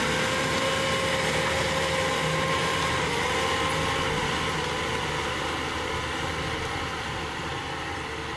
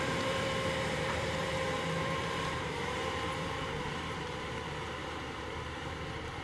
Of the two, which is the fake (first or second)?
second